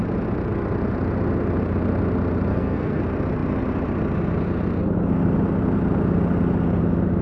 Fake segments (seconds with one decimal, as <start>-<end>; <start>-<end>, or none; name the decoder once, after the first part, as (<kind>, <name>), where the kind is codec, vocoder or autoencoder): 2.5-3.0 (codec, SNAC)